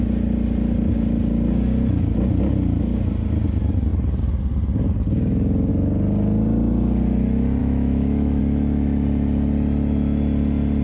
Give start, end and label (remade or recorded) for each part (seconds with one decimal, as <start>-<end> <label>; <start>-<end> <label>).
0.0-7.6 recorded; 7.6-8.4 remade; 8.4-10.8 recorded